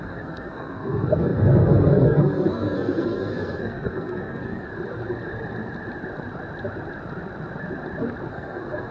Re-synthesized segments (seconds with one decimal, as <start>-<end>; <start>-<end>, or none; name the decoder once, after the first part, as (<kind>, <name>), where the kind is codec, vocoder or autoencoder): 0.0-4.7 (codec, SNAC); 8.3-8.9

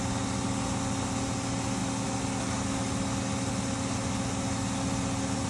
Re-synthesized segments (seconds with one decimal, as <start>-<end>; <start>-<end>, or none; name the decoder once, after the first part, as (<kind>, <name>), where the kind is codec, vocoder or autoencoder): none

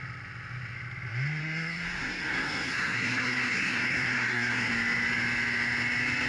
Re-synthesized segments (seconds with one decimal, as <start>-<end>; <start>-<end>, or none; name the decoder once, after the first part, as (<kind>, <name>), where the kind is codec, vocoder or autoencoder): 1.4-4.7 (codec, SNAC)

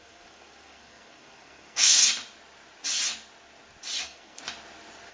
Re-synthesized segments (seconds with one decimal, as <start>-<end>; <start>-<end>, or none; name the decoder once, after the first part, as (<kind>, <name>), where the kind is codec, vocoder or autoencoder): 0.0-2.0 (codec, SNAC); 4.0-4.4

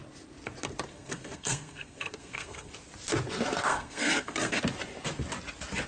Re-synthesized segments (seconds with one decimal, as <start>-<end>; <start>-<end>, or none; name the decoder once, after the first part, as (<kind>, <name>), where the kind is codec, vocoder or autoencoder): 0.9-2.7 (codec, SNAC); 3.7-4.6

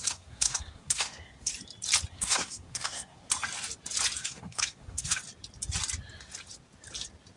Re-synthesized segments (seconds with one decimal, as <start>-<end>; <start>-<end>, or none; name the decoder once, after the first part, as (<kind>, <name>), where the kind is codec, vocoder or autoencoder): 0.0-1.5 (codec, SNAC); 2.1-3.2; 4.2-5.2